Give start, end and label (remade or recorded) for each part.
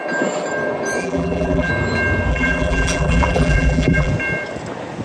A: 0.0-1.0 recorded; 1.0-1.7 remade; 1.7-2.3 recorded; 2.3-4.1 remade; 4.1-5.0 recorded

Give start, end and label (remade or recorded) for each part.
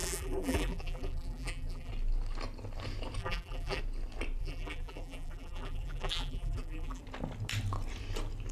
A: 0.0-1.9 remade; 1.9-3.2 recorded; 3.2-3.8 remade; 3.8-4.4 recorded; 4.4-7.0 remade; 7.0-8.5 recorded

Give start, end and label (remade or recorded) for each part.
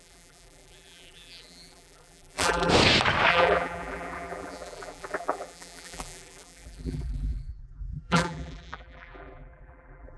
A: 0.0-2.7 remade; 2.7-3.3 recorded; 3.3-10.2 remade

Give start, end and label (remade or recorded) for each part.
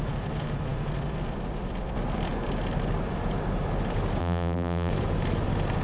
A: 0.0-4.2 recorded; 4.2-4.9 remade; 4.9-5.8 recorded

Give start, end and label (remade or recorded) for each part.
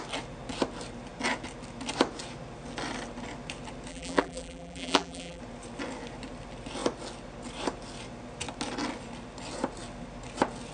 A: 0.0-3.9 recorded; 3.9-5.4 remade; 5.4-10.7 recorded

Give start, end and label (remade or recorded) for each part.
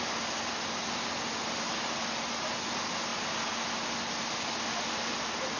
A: 0.0-5.6 recorded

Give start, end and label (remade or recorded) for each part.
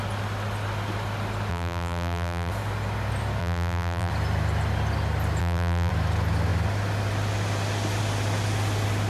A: 0.0-1.5 recorded; 1.5-2.5 remade; 2.5-3.4 recorded; 3.4-4.1 remade; 4.1-5.4 recorded; 5.4-5.9 remade; 5.9-9.1 recorded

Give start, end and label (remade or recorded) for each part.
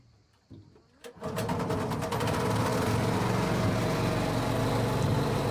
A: 0.0-5.5 recorded